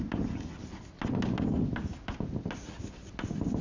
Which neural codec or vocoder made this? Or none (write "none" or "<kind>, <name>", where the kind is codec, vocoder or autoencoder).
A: none